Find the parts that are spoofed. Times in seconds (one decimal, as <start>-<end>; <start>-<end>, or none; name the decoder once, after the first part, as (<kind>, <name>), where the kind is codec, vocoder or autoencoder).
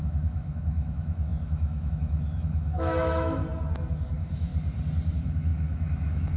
0.0-3.4 (autoencoder, DAC-VAE); 3.9-4.5; 5.1-6.4